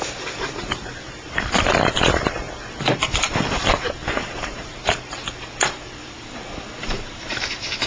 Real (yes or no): no